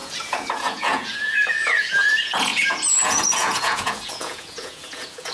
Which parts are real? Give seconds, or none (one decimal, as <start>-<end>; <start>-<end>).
none